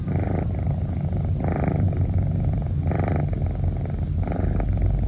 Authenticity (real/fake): real